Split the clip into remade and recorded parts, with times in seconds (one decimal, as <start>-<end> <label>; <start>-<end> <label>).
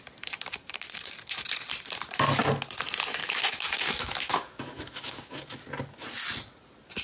0.0-3.2 recorded; 3.2-5.6 remade; 5.6-7.0 recorded